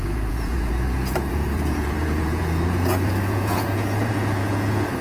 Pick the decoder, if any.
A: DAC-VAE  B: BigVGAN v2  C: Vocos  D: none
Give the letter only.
C